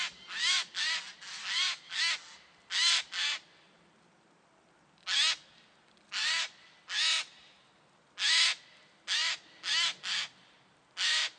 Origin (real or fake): real